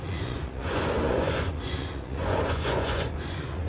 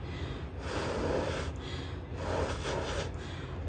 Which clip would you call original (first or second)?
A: second